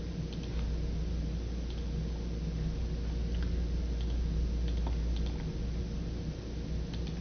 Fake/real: real